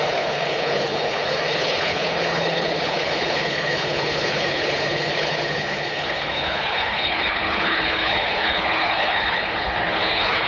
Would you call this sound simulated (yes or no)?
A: yes